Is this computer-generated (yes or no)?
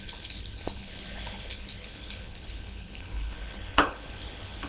yes